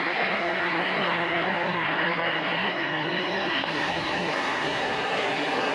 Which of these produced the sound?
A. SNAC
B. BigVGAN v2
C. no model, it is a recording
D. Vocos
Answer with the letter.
A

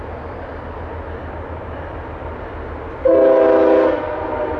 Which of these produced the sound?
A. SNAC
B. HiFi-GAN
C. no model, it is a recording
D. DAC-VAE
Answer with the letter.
C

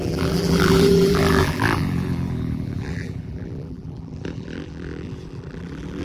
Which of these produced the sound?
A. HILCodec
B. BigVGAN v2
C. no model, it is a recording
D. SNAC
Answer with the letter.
B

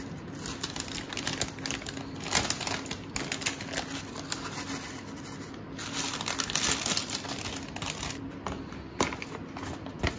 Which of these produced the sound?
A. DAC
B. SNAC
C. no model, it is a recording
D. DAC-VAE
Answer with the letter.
C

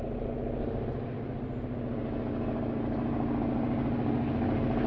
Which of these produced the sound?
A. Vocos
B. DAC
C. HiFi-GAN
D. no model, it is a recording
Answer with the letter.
D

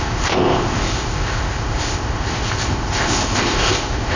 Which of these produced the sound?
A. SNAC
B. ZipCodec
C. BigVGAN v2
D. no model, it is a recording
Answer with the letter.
B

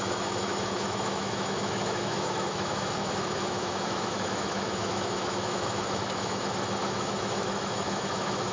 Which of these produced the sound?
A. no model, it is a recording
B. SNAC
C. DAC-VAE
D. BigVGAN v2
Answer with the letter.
C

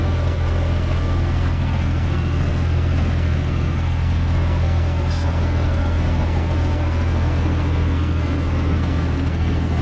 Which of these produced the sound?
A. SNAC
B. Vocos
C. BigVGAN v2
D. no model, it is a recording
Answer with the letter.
A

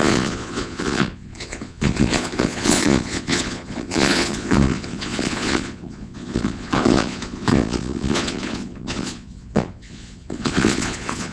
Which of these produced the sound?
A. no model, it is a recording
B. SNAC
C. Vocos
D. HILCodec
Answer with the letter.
C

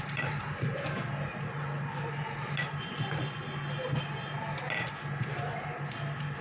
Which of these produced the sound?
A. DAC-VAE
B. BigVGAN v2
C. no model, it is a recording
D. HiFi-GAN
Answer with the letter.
C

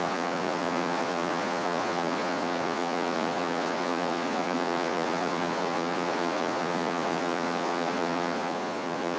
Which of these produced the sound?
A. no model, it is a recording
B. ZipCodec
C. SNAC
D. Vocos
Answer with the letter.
D